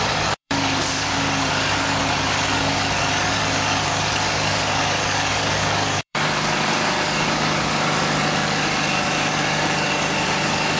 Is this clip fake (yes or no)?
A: yes